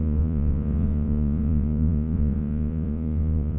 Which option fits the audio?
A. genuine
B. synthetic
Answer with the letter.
B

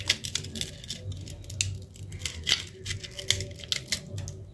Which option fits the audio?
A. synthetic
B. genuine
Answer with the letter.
B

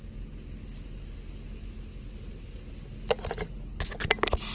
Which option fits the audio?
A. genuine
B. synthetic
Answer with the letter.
A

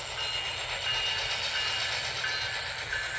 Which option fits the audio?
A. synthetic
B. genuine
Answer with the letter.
B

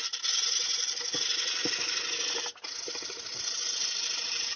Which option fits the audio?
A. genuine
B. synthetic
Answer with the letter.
A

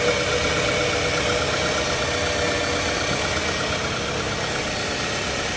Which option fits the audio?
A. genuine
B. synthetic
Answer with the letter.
A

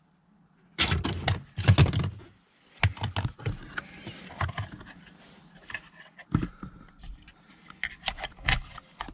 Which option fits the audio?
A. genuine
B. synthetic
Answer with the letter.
A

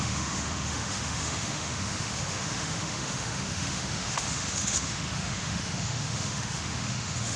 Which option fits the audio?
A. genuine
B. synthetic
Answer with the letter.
B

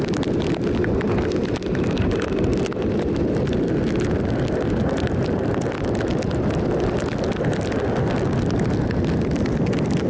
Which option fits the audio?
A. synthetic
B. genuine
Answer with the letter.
B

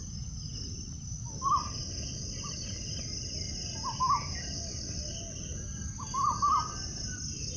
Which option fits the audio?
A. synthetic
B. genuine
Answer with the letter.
B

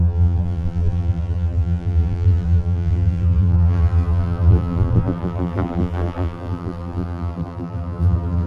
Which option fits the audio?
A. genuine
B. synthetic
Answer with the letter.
B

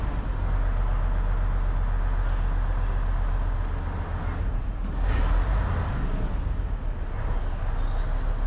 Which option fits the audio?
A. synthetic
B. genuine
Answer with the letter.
B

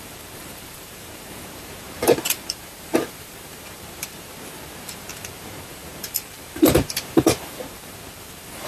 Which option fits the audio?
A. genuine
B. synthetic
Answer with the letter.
B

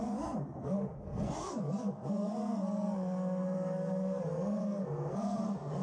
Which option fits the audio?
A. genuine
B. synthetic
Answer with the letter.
B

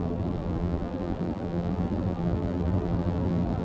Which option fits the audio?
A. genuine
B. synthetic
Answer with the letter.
B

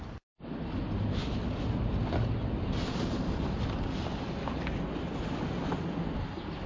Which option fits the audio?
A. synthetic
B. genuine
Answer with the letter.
B